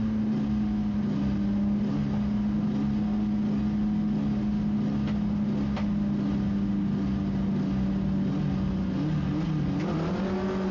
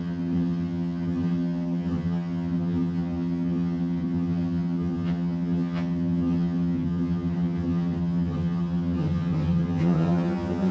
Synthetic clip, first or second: second